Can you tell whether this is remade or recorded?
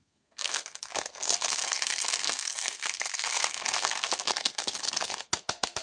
remade